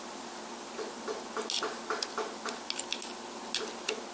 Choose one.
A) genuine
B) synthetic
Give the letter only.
A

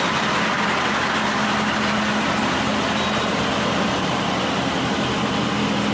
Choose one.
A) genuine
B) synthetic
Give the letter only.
A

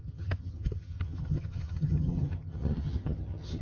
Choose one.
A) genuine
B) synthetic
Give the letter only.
B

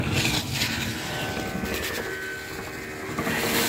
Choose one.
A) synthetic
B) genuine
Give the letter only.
B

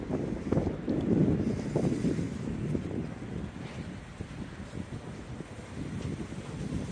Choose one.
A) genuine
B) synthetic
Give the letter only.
A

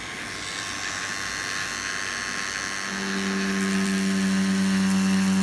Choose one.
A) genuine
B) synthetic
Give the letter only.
A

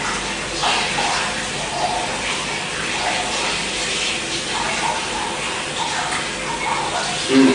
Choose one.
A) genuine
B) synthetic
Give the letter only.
A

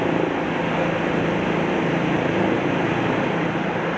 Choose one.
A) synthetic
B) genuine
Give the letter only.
B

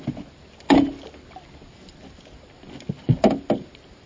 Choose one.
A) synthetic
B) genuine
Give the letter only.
B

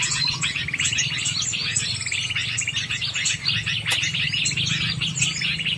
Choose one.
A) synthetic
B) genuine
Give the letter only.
B